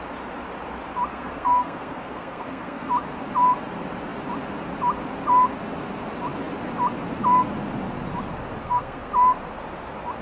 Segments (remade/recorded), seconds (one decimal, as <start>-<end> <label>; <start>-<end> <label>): 0.0-1.1 recorded; 1.1-2.9 remade; 2.9-8.6 recorded; 8.6-9.1 remade; 9.1-10.2 recorded